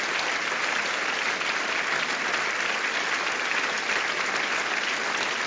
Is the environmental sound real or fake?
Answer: real